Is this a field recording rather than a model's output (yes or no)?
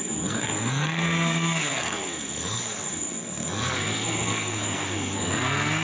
no